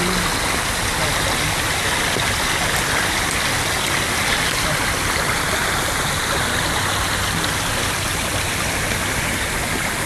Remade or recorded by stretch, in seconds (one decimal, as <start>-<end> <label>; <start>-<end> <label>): 0.0-5.6 recorded; 5.6-8.5 remade; 8.5-10.1 recorded